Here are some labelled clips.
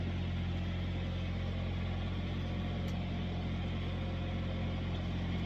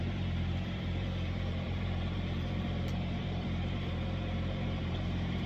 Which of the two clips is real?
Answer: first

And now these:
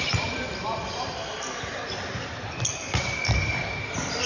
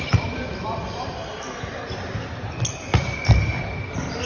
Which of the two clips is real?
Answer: second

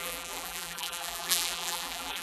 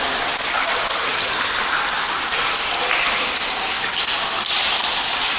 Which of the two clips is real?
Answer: second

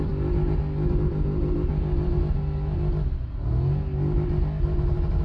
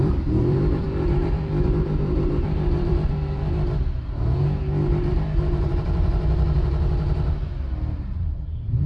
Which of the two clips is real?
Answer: first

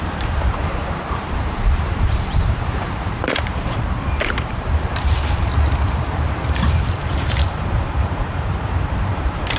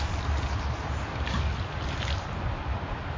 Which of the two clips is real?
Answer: second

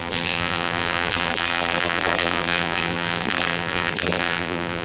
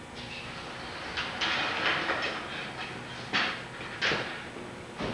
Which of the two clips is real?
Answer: second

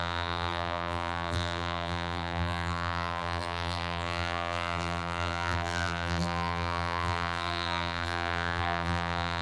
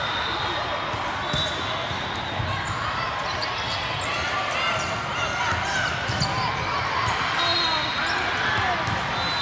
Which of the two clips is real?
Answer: second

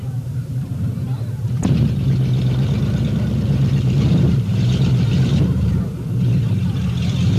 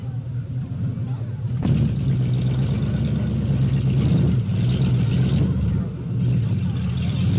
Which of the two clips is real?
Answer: second